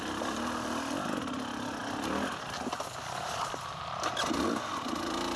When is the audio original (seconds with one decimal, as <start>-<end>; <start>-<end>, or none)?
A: 0.0-5.4